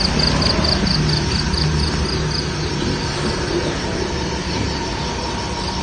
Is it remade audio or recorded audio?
recorded